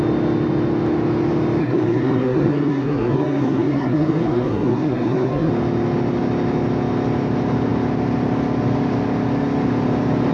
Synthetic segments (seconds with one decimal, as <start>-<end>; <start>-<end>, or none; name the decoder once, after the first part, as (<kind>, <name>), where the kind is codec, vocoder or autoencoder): 1.6-5.5 (codec, SNAC)